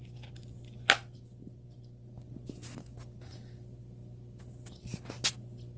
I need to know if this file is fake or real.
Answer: real